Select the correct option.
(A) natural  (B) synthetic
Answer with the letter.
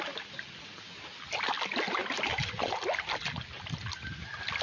A